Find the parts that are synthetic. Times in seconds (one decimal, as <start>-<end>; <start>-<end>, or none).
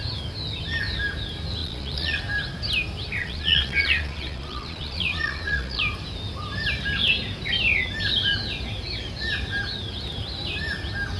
1.6-2.2; 3.2-5.8